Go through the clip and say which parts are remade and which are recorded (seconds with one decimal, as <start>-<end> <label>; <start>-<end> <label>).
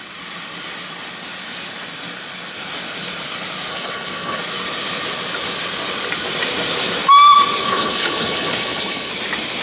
0.0-3.7 recorded; 3.7-4.4 remade; 4.4-7.6 recorded; 7.6-9.1 remade; 9.1-9.6 recorded